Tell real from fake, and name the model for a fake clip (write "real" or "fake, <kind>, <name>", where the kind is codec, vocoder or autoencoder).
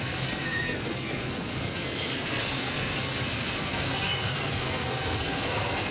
fake, codec, SNAC